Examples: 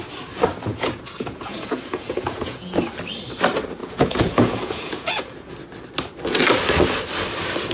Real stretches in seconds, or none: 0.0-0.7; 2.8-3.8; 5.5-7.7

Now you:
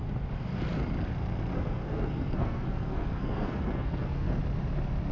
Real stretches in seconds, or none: 0.0-1.5; 4.4-5.1